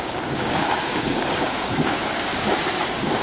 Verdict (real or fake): fake